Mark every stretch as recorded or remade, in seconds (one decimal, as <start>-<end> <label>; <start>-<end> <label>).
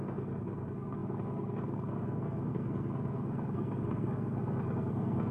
0.0-5.3 remade